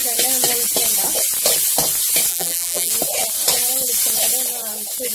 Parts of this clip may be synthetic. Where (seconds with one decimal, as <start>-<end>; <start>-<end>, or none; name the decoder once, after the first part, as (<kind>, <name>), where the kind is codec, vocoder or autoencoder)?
2.3-2.9 (vocoder, BigVGAN v2)